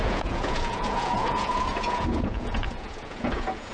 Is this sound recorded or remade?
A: remade